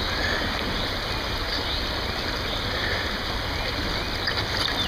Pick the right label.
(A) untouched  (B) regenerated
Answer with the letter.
A